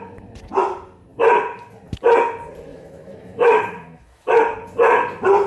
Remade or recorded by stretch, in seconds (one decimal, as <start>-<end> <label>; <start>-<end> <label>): 0.0-2.7 recorded; 2.7-4.4 remade; 4.4-5.5 recorded